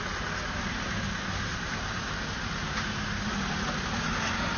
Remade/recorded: recorded